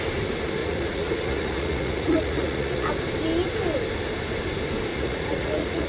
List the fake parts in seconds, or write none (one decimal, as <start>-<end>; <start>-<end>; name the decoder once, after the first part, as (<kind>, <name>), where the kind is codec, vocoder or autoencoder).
0.6-2.9 (vocoder, Vocos); 4.9-5.9